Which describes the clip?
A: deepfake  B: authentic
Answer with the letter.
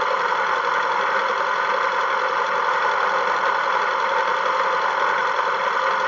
B